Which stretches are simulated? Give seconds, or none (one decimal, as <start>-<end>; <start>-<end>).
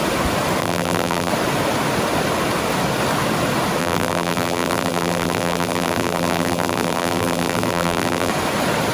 0.6-1.3; 3.8-8.3